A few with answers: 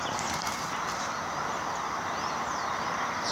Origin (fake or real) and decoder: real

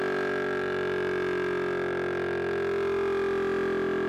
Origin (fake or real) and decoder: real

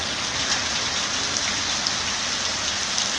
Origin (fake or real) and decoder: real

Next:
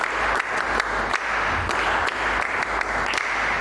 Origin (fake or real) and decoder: real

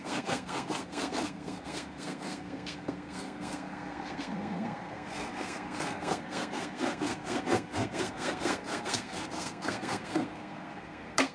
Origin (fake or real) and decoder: fake, codec, SNAC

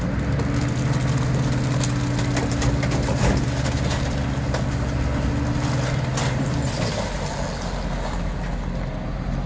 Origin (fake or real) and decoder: real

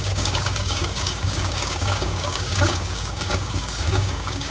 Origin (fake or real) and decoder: fake, codec, DAC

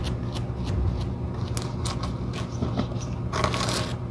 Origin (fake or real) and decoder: real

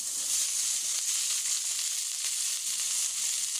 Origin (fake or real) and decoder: real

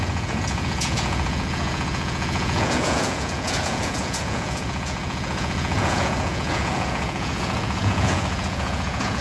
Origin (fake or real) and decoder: fake, vocoder, Vocos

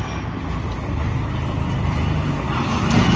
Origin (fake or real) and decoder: real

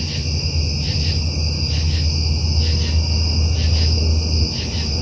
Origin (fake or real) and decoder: real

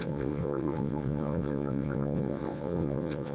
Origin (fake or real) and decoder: fake, vocoder, WaveNeXt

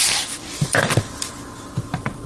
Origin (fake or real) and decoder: real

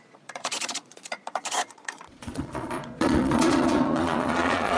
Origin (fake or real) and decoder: fake, vocoder, Vocos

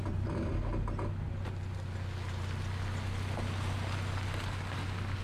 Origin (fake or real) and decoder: real